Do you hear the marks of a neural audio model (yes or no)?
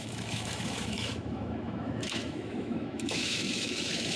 yes